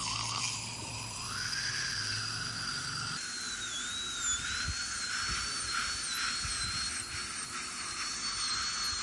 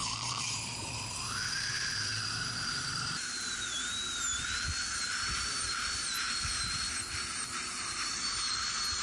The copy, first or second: second